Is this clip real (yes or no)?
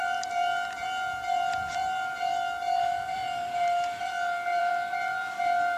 no